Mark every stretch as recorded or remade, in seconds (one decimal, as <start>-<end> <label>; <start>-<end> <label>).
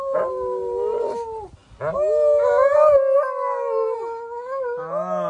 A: 0.0-5.3 recorded